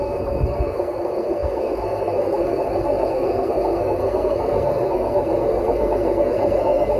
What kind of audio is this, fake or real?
fake